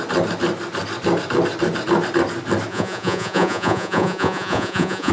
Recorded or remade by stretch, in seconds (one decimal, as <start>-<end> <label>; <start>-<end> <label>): 0.0-2.7 recorded; 2.7-5.1 remade